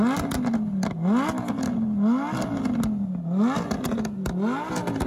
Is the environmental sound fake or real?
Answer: real